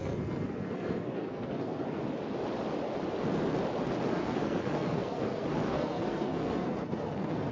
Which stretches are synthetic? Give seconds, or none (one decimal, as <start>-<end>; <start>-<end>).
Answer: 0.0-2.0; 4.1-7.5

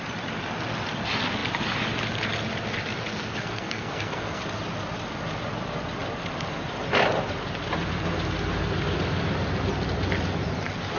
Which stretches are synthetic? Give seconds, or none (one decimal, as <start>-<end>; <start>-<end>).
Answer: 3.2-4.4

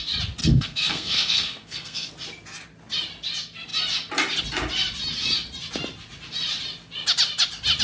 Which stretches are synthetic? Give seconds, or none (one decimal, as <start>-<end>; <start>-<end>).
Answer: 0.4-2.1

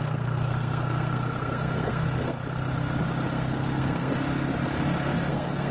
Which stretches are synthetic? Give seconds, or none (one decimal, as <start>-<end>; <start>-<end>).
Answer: 0.0-2.4; 3.3-4.1; 5.3-5.7

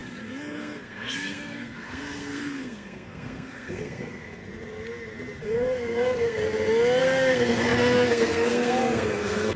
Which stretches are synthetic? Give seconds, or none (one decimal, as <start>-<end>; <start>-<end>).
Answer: 0.0-4.4; 5.4-6.4; 7.0-9.6

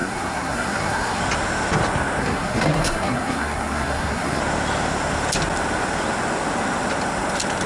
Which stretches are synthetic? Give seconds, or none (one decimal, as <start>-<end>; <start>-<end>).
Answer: 0.0-1.2; 2.2-4.4

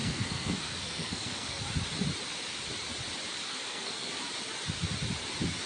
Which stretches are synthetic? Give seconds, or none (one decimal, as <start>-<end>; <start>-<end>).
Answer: 0.0-1.6; 3.5-4.1